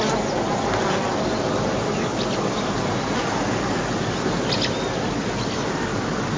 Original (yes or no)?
yes